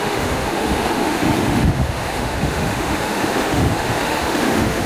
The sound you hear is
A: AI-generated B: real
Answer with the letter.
A